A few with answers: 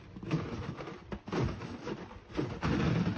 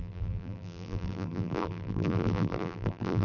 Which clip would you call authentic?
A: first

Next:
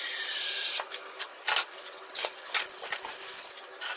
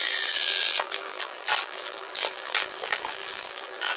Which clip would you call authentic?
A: first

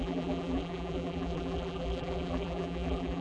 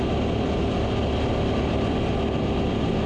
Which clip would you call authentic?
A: second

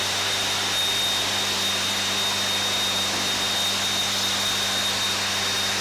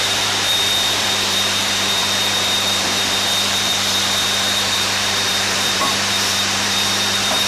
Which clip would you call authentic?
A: first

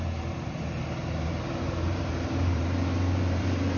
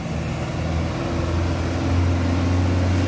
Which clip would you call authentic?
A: second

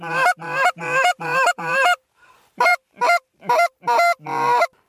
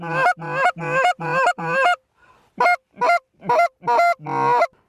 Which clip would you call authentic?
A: second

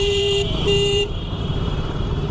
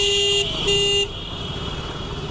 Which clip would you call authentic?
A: second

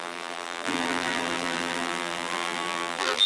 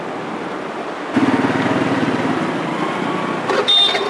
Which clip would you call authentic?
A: second